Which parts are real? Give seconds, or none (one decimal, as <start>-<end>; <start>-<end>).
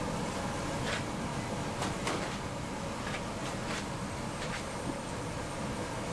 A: 0.0-6.1